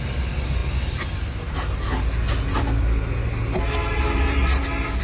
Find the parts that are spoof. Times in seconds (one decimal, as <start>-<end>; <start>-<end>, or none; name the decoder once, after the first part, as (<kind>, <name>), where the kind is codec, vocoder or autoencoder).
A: none